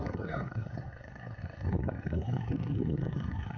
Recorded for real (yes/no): no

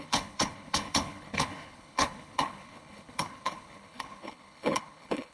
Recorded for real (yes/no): no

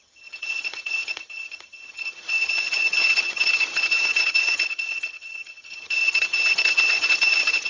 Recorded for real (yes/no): no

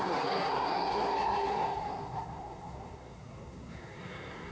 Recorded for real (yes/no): no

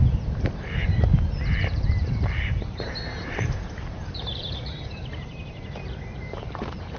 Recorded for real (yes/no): no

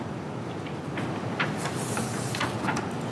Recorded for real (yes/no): yes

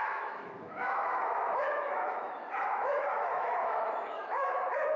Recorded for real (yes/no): no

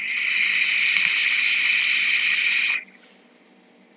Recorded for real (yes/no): yes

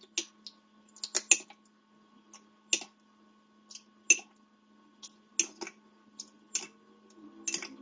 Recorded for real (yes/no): yes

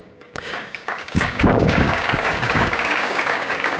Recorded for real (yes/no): no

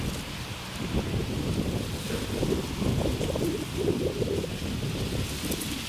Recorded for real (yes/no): yes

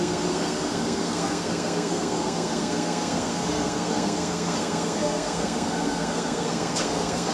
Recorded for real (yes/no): no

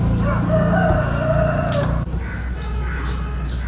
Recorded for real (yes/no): yes